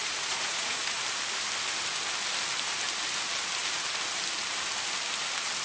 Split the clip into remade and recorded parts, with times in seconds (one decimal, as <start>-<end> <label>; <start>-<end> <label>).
0.0-1.0 remade; 1.0-5.6 recorded